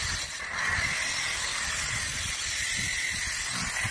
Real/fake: real